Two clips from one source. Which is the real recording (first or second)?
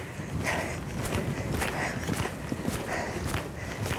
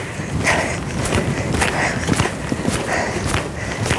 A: first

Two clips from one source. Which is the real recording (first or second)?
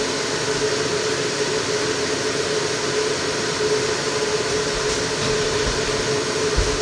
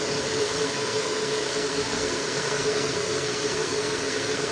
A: first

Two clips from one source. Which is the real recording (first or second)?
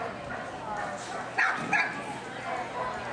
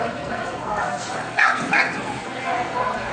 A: first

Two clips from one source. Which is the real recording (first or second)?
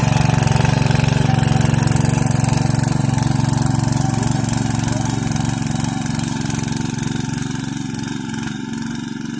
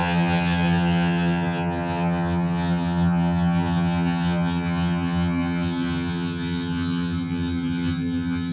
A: first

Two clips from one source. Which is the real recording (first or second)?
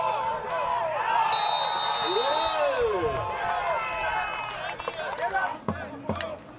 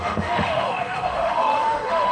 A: first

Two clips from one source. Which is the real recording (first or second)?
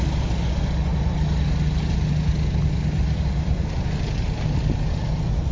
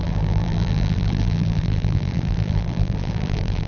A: first